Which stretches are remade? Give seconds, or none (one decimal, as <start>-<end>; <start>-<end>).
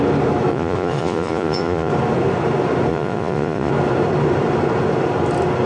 0.5-1.9; 2.9-3.7